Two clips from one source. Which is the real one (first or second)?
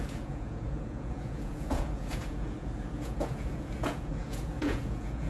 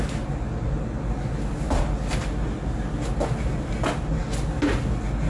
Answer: second